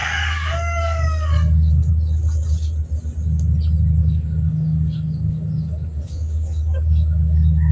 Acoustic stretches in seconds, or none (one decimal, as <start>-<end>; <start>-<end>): 1.9-4.0